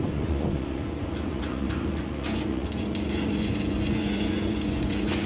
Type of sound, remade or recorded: remade